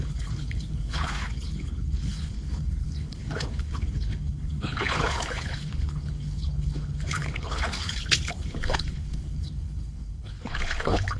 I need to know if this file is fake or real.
fake